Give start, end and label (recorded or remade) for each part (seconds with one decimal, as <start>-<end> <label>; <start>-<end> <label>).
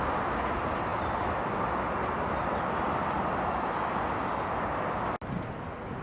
0.0-6.0 recorded